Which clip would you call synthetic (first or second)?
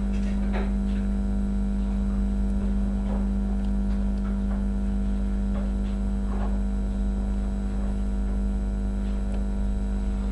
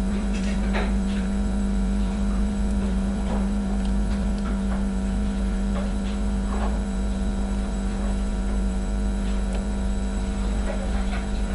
second